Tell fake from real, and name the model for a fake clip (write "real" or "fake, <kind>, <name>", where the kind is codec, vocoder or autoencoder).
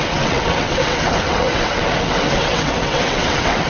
fake, vocoder, WaveNeXt